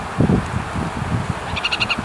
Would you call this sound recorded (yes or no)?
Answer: yes